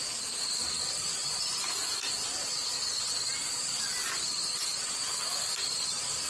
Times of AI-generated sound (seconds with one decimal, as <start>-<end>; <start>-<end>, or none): 1.2-3.0